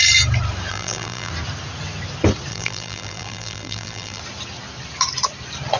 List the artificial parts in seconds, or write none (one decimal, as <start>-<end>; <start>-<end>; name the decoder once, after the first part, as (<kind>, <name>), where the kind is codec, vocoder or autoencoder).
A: 0.7-1.3 (vocoder, BigVGAN v2); 2.5-4.2